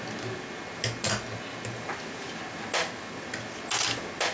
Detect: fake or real real